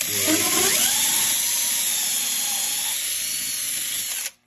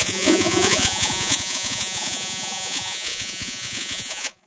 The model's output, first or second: second